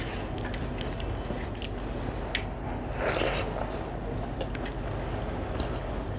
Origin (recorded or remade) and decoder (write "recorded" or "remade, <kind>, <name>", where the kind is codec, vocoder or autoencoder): recorded